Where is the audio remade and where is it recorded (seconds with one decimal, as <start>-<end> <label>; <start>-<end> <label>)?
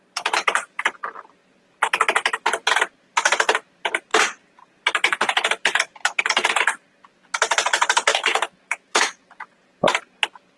0.0-8.1 recorded; 8.1-9.5 remade; 9.5-10.6 recorded